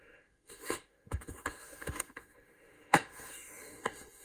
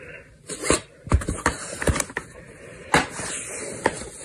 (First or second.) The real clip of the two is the second